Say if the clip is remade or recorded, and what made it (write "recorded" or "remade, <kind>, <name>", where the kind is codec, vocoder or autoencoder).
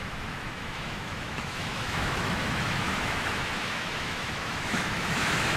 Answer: remade, autoencoder, DAC-VAE